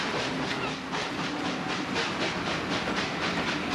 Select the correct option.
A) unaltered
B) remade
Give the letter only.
A